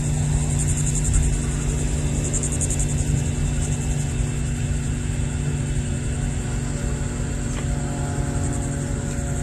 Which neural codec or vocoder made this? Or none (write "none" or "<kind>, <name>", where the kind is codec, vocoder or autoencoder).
none